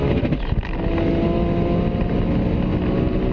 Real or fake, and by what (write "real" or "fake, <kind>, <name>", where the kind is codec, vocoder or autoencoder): real